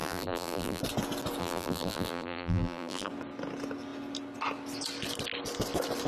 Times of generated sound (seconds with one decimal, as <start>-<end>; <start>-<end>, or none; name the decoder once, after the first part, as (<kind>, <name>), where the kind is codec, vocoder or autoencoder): 0.0-0.8 (vocoder, BigVGAN v2); 1.4-3.1